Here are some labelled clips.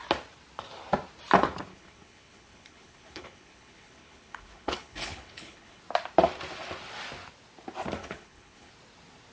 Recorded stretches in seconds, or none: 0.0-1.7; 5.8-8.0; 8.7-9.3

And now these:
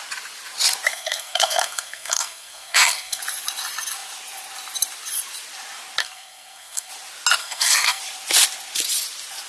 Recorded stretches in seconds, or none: 0.0-0.9; 3.2-6.0; 6.9-7.4; 8.0-9.5

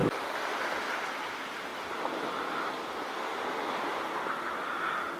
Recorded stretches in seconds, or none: 0.0-5.2

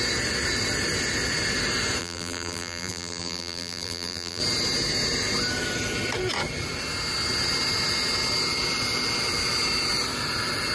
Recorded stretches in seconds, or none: 0.0-2.0; 4.4-10.7